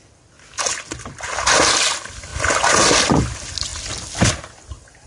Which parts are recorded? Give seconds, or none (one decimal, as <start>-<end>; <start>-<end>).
0.0-5.1